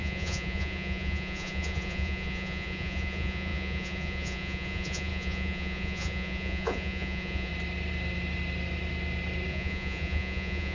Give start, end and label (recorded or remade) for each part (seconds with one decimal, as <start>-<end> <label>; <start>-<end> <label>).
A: 0.0-7.5 remade; 7.5-9.5 recorded; 9.5-10.7 remade

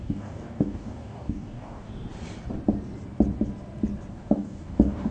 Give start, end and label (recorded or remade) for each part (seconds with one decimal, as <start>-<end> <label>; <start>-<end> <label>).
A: 0.0-1.9 remade; 1.9-4.1 recorded; 4.1-5.1 remade